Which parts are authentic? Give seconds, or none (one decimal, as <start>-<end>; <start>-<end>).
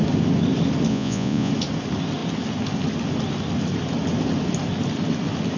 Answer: 0.0-0.9; 1.5-5.6